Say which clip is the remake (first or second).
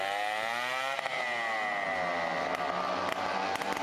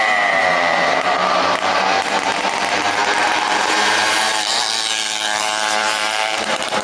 second